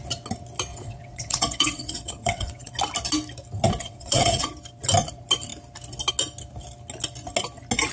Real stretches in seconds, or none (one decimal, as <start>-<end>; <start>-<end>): 0.0-0.7; 2.7-3.8; 4.5-7.9